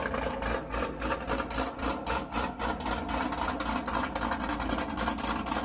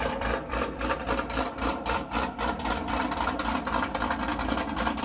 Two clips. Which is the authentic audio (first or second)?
first